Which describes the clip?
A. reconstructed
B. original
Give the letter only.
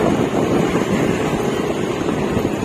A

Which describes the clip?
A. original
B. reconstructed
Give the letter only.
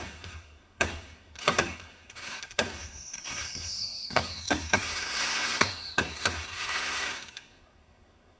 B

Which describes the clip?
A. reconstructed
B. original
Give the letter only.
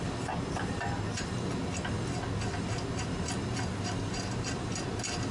B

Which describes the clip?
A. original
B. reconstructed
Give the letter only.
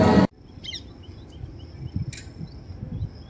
A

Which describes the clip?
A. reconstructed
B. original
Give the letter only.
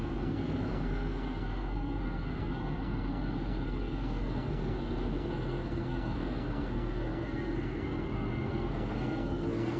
A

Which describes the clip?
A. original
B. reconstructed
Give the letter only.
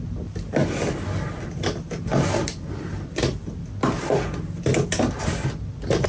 A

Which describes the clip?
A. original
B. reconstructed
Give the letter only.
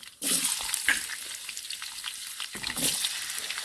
A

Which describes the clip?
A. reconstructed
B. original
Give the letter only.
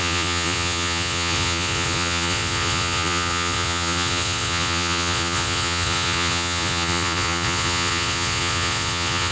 A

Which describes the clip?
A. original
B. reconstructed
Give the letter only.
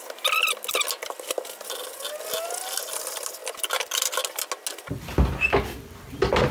A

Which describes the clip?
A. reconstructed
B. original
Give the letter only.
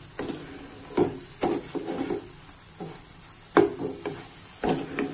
B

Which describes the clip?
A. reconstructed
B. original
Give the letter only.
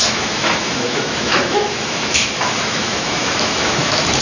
A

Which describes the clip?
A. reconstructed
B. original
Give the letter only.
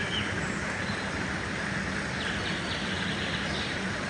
B